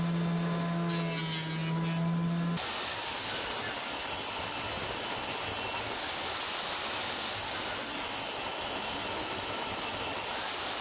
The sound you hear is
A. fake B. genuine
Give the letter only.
B